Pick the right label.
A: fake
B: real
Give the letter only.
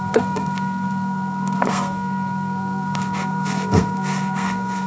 A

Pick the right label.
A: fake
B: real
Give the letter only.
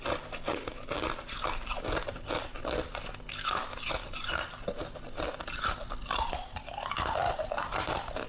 B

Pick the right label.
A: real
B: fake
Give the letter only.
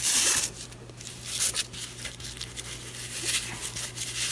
A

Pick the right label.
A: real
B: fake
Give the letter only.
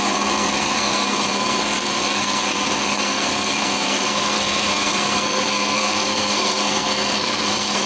B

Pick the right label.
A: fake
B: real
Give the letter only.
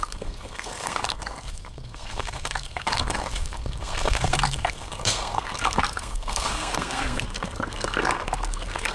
A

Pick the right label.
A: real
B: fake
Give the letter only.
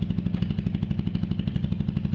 A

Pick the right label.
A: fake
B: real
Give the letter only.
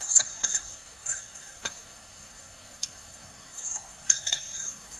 A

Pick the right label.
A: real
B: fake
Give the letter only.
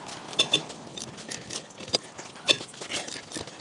A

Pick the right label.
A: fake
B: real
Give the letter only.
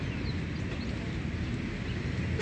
B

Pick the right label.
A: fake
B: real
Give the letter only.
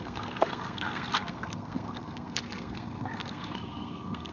A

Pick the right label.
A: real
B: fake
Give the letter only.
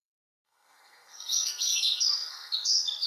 B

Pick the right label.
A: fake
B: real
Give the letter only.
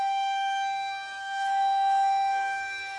A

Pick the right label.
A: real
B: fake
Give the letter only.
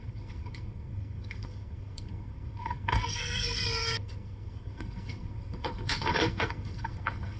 B